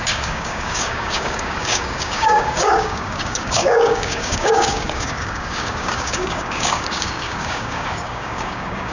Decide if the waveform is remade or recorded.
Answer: remade